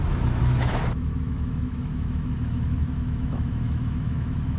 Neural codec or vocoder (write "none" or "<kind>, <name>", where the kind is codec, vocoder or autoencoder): autoencoder, DAC-VAE